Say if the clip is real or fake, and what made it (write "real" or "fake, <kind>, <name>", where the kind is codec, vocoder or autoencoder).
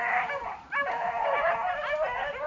real